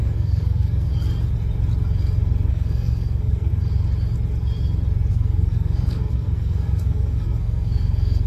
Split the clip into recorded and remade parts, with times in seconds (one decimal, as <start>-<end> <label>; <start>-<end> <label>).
0.0-0.9 remade; 0.9-2.5 recorded; 2.5-3.5 remade; 3.5-5.1 recorded; 5.1-8.3 remade